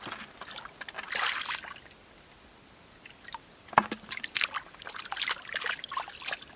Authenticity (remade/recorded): recorded